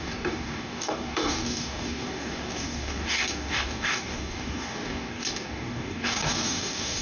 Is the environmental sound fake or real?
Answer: fake